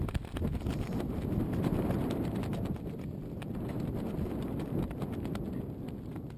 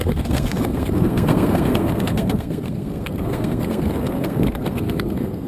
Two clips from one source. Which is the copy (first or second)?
second